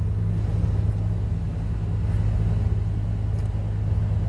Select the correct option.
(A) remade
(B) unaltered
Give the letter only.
B